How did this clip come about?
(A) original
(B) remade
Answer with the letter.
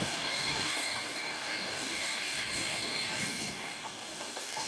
B